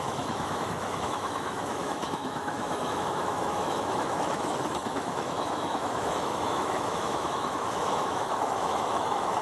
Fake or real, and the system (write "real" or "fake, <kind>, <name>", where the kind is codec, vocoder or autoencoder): fake, autoencoder, DAC-VAE